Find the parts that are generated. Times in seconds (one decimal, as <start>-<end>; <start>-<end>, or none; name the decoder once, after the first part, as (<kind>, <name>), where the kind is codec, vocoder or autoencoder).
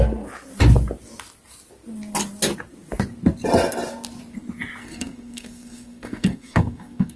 4.8-7.2 (codec, SNAC)